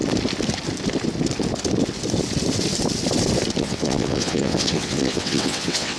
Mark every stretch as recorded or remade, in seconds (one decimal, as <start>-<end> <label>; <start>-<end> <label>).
0.0-3.6 recorded; 3.6-6.0 remade